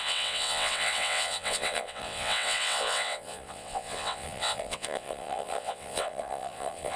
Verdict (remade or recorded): remade